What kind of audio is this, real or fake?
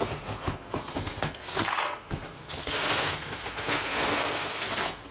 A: fake